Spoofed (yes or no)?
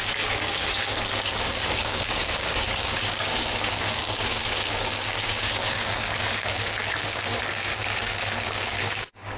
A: yes